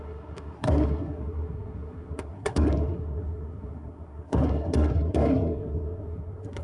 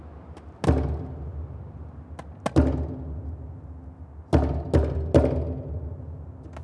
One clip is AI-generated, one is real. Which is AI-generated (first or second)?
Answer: first